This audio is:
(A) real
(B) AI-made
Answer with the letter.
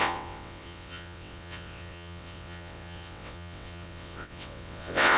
B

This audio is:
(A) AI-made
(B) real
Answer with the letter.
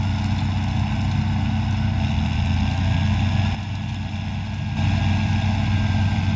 B